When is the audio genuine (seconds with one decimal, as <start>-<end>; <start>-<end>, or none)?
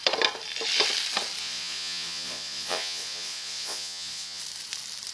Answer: 0.0-1.4; 4.4-5.1